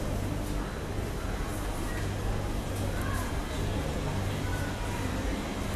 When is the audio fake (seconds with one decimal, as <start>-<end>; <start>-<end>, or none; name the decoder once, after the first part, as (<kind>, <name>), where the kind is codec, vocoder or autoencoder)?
4.5-5.3 (vocoder, BigVGAN v2)